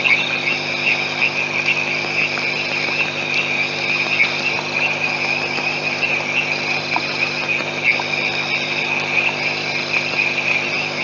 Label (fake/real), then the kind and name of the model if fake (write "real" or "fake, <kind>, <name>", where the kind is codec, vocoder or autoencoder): real